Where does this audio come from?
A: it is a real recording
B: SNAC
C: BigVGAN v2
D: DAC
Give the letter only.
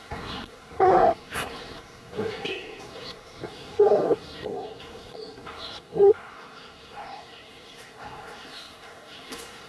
B